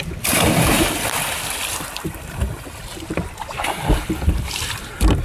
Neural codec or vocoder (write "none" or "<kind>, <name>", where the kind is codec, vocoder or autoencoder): vocoder, BigVGAN v2